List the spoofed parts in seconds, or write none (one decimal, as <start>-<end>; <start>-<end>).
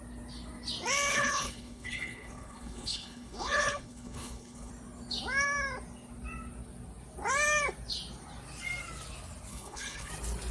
1.1-4.7; 9.5-10.1